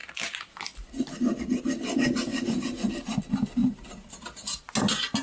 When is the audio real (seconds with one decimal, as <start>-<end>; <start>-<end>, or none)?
0.0-5.2